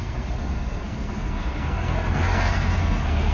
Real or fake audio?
fake